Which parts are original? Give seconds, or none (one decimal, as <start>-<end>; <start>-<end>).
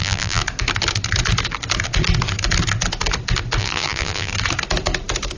0.4-3.6; 4.3-5.4